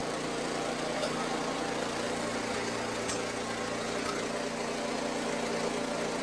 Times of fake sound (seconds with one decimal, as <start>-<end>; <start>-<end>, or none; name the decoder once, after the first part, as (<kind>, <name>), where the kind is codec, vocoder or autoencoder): 0.0-2.4 (vocoder, BigVGAN v2)